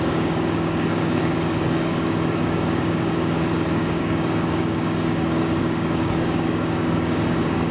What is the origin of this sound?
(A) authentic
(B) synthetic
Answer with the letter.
B